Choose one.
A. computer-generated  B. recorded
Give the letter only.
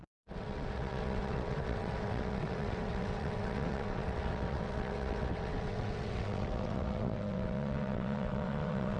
A